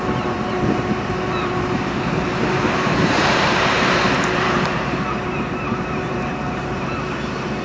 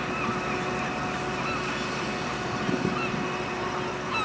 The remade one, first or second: first